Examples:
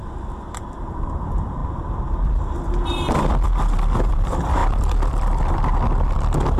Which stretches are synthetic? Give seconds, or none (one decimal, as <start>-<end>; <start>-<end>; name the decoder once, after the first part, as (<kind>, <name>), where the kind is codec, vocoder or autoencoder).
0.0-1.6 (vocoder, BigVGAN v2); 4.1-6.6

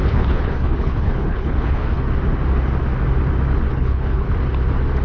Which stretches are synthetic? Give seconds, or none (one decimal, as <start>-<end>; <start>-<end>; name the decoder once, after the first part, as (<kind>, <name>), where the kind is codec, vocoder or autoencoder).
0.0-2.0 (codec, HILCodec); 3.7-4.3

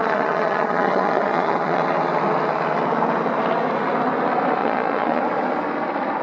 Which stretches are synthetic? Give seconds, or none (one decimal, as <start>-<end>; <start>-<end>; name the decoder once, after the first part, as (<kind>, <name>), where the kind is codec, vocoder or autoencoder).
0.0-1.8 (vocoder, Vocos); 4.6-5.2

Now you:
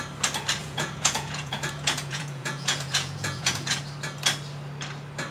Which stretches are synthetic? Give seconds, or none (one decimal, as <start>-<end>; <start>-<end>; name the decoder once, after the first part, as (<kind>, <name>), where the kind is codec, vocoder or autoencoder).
0.6-3.8 (vocoder, Vocos)

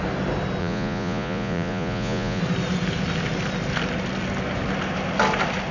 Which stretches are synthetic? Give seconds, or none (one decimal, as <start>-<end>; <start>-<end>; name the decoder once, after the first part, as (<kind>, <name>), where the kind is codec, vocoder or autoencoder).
0.6-2.4 (vocoder, Vocos)

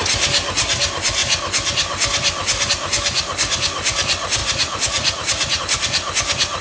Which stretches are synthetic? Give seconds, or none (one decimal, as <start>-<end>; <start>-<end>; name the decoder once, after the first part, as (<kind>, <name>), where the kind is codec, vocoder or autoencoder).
4.4-5.6 (vocoder, Vocos)

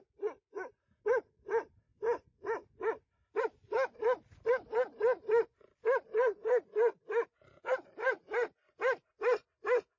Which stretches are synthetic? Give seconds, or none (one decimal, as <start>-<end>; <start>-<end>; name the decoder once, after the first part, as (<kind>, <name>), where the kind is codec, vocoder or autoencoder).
none

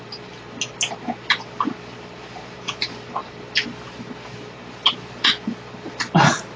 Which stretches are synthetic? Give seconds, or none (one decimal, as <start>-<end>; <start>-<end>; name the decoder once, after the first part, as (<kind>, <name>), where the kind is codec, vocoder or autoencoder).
none